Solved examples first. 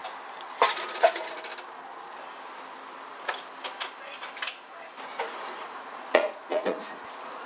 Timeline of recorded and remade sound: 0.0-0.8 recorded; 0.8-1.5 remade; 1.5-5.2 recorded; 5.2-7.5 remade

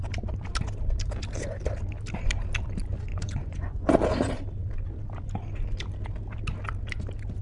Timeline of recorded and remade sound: 0.0-3.1 recorded; 3.1-3.9 remade; 3.9-7.4 recorded

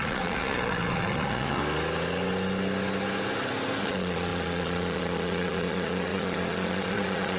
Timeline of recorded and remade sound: 0.0-1.6 remade; 1.6-3.8 recorded; 3.8-7.4 remade

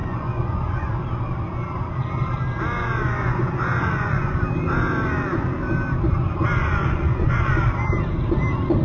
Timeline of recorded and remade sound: 0.0-0.9 remade; 0.9-2.8 recorded; 2.8-4.4 remade; 4.4-6.6 recorded; 6.6-7.6 remade; 7.6-8.8 recorded